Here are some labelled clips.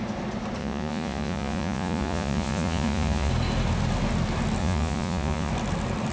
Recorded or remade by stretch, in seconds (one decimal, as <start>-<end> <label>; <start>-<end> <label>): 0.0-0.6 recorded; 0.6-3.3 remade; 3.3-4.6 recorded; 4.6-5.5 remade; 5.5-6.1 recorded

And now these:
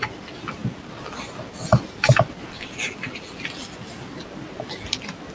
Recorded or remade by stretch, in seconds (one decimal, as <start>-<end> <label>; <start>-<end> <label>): 0.0-5.3 recorded

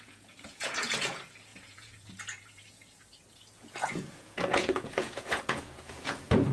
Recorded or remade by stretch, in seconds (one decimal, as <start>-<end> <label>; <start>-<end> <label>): 0.0-6.5 remade

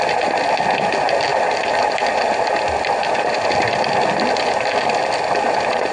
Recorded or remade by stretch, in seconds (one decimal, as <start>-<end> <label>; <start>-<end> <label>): 0.0-5.9 recorded

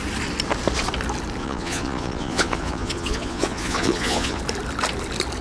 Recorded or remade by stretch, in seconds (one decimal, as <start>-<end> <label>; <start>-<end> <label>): 0.0-1.4 recorded; 1.4-4.4 remade; 4.4-5.4 recorded

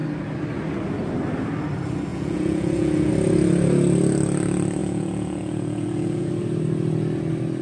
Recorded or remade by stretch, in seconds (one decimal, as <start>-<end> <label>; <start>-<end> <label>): 0.0-2.1 recorded; 2.1-3.1 remade; 3.1-4.8 recorded; 4.8-6.3 remade; 6.3-7.6 recorded

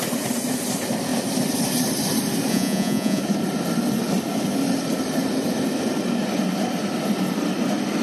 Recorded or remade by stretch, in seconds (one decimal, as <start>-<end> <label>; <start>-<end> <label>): 0.0-2.5 recorded; 2.5-3.2 remade; 3.2-8.0 recorded

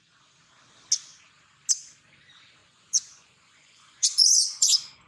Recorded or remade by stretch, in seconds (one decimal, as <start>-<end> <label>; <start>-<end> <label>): 0.0-2.6 recorded; 2.6-5.1 remade